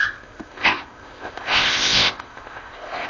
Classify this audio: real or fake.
fake